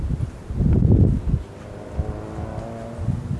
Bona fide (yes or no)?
yes